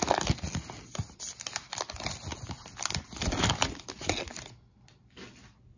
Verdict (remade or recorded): recorded